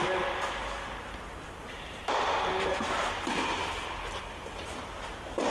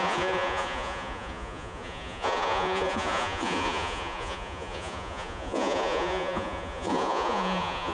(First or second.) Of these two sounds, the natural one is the first